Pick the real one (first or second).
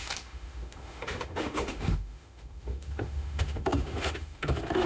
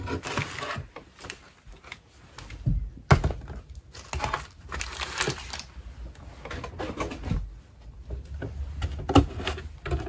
second